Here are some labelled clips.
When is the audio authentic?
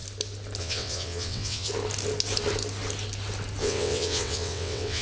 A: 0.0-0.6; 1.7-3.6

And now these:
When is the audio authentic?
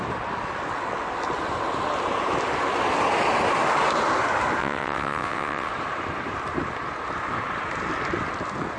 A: 0.0-4.6; 5.7-8.8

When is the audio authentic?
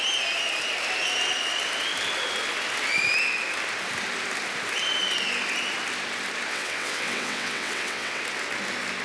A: 0.0-6.5; 8.2-9.0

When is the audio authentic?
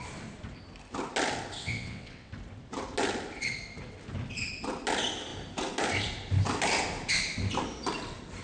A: 0.0-1.6; 2.3-8.4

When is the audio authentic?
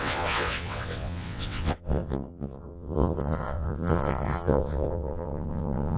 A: none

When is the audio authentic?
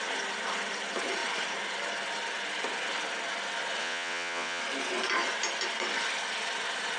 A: 0.0-3.8; 4.6-7.0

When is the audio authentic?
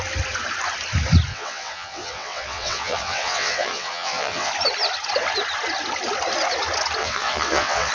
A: 0.0-1.3; 4.5-7.0